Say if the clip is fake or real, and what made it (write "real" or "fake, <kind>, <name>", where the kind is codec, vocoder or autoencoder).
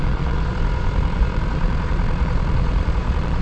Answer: fake, vocoder, Vocos